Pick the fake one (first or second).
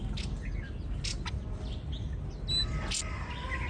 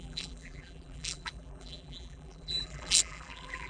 second